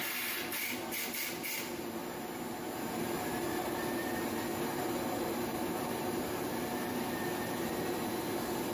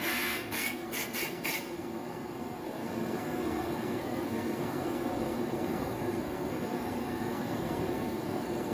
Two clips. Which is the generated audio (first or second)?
second